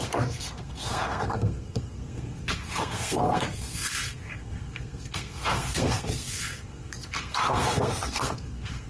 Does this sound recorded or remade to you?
remade